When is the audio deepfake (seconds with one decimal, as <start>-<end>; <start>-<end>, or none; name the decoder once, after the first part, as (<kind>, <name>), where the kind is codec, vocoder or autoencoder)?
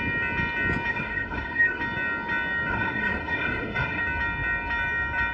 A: 0.9-1.8 (codec, SNAC); 2.7-4.0